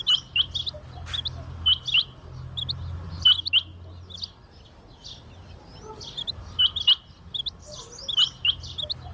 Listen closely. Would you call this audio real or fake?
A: real